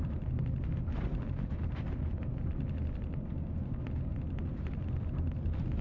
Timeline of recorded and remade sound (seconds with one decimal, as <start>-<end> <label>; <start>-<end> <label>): 0.0-5.8 recorded